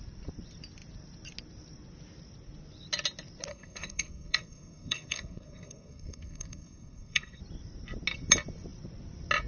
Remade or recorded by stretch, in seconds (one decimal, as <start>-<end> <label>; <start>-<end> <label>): 0.0-3.5 recorded; 3.5-7.4 remade; 7.4-9.5 recorded